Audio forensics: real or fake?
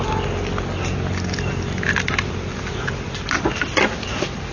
real